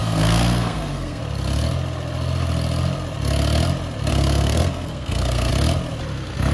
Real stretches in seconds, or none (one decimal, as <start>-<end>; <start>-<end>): 1.2-4.1; 5.5-6.5